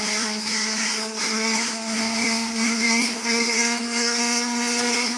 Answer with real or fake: fake